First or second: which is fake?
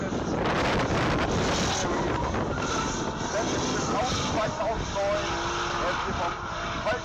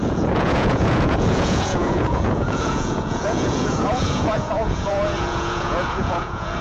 second